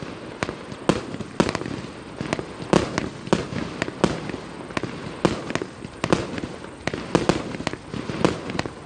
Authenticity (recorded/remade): recorded